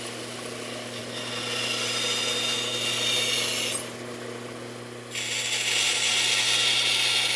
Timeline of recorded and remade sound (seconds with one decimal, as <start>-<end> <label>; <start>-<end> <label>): 0.0-7.4 recorded